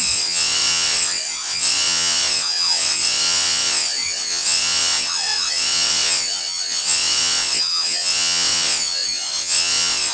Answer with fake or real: fake